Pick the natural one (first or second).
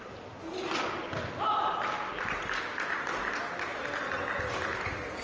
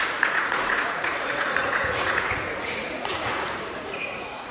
first